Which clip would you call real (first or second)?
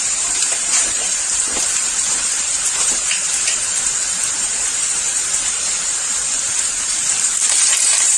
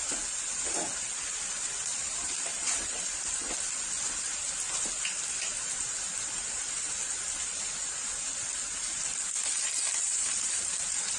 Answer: second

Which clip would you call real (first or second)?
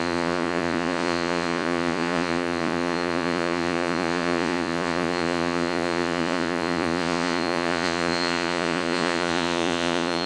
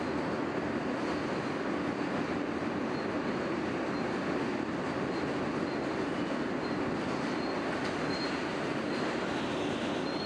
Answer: second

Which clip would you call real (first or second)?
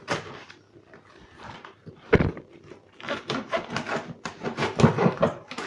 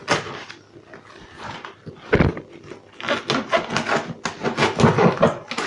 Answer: second